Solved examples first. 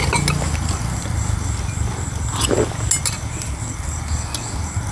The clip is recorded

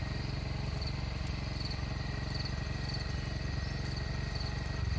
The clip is recorded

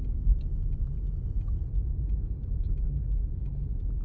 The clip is recorded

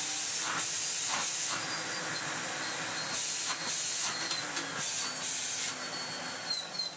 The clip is recorded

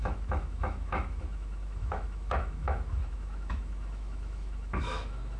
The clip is remade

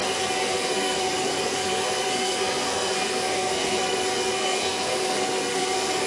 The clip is remade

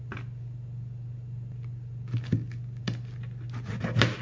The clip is recorded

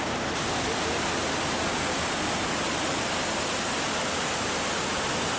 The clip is recorded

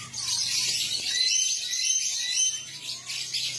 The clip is recorded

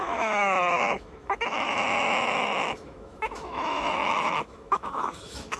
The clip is remade